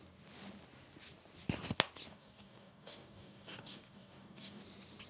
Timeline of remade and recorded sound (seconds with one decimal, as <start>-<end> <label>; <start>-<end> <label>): 0.0-2.1 recorded; 2.1-4.6 remade; 4.6-5.1 recorded